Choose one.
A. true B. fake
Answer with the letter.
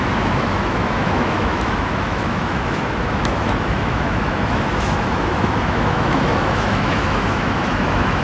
B